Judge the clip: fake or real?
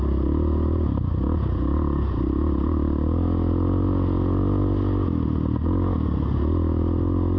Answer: real